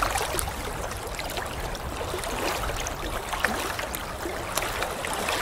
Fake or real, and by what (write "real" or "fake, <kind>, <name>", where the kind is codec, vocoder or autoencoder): real